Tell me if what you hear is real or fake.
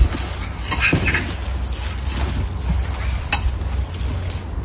real